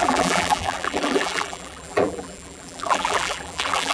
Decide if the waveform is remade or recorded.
remade